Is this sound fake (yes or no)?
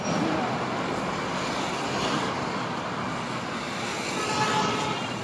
no